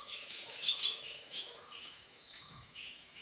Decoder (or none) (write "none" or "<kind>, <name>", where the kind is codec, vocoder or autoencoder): autoencoder, DAC-VAE